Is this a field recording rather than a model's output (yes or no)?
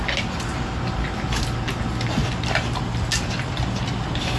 yes